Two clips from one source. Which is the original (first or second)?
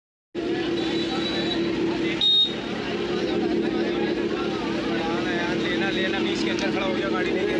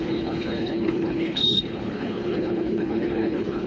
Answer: first